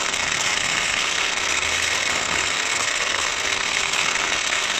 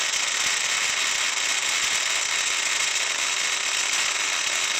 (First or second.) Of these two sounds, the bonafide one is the second